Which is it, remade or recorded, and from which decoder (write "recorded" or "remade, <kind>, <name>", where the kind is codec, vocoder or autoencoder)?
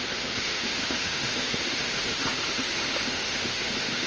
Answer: remade, autoencoder, DAC-VAE